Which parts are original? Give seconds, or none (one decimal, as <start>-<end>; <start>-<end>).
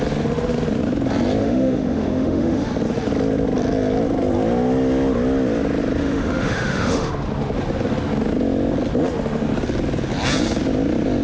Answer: 0.0-1.4; 2.7-6.0; 7.1-11.2